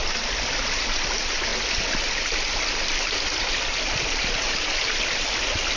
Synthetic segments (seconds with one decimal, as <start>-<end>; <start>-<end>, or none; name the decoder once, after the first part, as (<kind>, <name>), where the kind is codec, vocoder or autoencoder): none